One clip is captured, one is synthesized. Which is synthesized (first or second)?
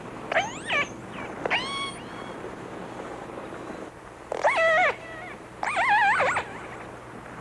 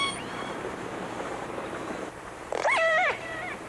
second